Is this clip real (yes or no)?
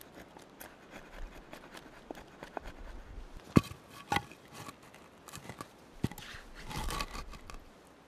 yes